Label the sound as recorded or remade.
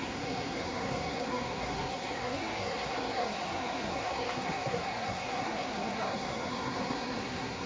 remade